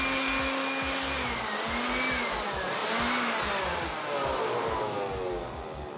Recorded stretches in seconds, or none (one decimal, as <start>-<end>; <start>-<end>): 0.0-6.0